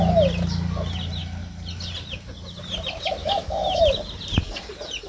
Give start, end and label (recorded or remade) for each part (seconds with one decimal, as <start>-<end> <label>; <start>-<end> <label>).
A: 0.0-3.2 recorded; 3.2-3.8 remade; 3.8-5.1 recorded